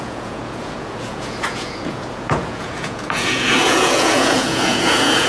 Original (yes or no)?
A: no